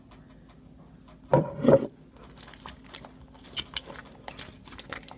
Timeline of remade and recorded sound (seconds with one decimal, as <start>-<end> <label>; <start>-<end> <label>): 0.0-5.2 recorded